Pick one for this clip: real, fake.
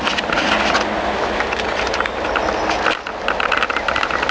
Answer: real